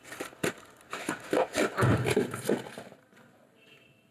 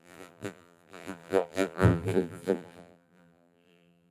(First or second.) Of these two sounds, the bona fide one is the first